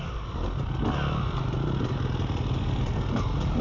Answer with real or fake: real